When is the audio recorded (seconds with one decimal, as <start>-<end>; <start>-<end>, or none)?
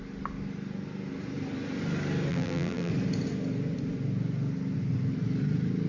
0.0-2.3; 2.9-5.9